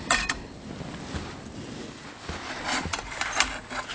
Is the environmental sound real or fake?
real